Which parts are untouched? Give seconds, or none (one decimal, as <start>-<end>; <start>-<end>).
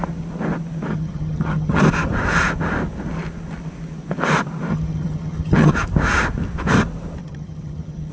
0.0-0.9; 1.8-4.7; 5.7-7.2